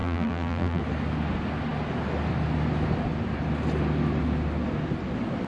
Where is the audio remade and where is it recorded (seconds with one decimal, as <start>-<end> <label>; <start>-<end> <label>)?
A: 0.0-0.8 remade; 0.8-5.5 recorded